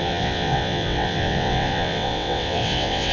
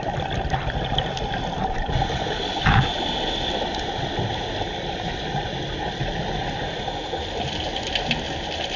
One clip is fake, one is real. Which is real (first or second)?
second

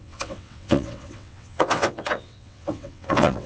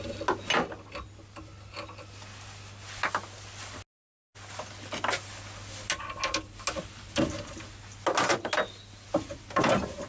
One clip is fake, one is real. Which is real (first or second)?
second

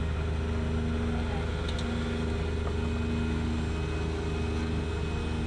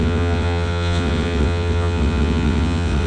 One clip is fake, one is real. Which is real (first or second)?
first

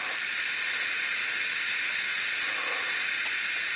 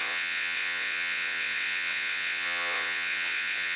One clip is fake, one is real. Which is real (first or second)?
first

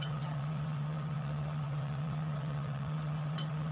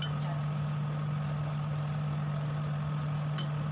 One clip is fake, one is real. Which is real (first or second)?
second